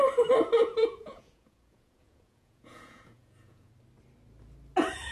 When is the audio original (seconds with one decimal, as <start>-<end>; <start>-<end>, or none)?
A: 0.0-0.6; 3.7-5.1